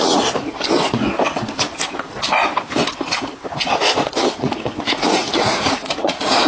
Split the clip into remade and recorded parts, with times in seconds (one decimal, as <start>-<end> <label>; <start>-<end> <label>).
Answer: 0.0-0.5 remade; 0.5-4.4 recorded; 4.4-6.5 remade